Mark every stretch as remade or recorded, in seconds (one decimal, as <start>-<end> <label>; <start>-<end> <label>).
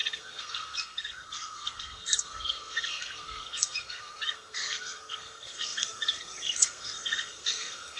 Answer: 0.0-8.0 remade